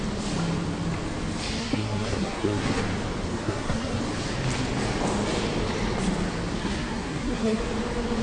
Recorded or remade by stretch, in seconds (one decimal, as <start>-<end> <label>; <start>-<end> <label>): 0.0-1.6 recorded; 1.6-2.8 remade; 2.8-3.3 recorded; 3.3-4.0 remade; 4.0-6.6 recorded; 6.6-7.6 remade; 7.6-8.2 recorded